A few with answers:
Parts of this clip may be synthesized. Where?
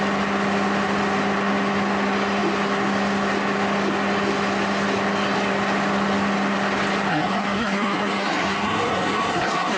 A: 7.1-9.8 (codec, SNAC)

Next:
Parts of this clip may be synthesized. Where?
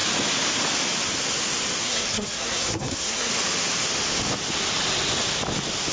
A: 1.8-3.3 (codec, SNAC)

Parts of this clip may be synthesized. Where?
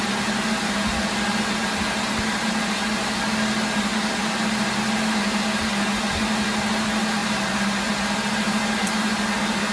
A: none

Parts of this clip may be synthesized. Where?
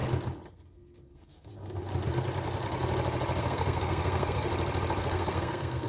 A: 0.5-1.5 (codec, SNAC); 3.4-4.5; 5.0-5.9